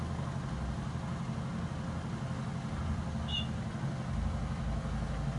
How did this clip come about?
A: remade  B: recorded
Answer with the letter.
B